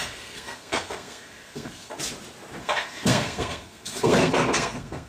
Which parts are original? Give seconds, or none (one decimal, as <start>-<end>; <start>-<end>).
2.0-2.6